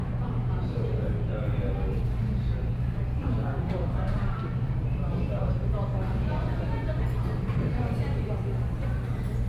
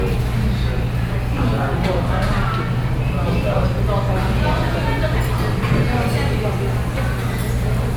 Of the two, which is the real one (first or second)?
second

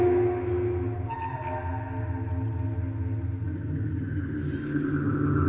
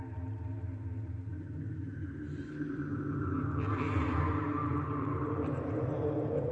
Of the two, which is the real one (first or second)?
first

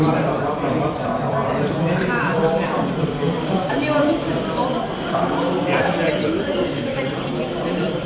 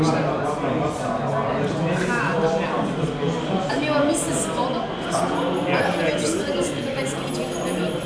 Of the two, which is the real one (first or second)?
second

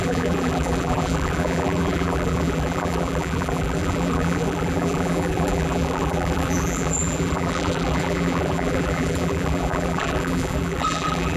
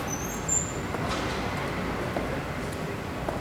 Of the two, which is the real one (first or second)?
second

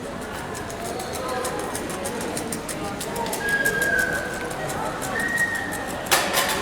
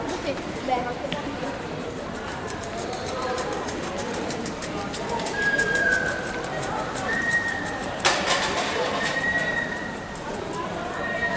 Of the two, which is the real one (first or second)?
first